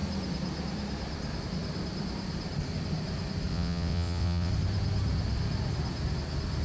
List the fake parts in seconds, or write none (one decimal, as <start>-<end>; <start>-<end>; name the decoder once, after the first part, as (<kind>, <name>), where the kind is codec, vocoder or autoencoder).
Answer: 3.5-4.5 (vocoder, WaveNeXt)

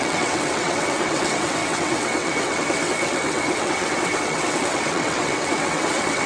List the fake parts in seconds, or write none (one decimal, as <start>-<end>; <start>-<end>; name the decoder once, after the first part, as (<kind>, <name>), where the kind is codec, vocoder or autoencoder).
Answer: 0.0-6.3 (vocoder, WaveNeXt)

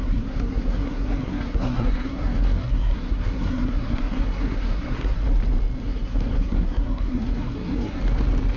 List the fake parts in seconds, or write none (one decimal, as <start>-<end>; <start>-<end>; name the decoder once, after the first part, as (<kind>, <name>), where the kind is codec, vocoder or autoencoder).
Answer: 0.0-5.2 (codec, SNAC); 5.8-8.0